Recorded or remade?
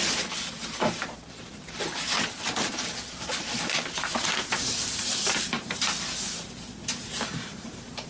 remade